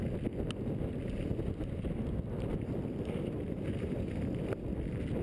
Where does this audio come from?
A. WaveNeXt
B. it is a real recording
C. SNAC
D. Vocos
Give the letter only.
B